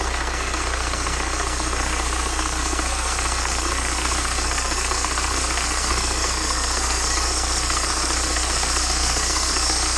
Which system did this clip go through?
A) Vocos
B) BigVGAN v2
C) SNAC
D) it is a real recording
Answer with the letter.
C